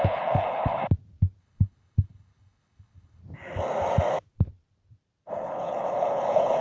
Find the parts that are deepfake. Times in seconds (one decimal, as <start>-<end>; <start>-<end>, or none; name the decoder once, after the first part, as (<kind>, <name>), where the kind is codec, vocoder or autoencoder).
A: 0.0-0.8 (codec, HILCodec); 1.4-3.2; 5.3-6.6